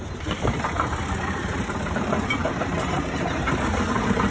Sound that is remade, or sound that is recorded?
remade